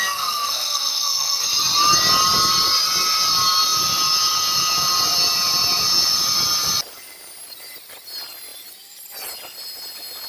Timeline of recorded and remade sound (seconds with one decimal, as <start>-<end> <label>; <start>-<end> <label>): 0.0-1.4 remade; 1.4-10.3 recorded